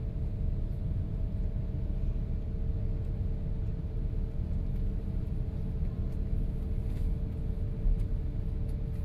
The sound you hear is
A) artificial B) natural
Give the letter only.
B